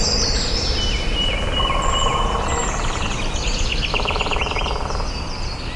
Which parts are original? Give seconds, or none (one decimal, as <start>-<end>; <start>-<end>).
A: 0.0-5.8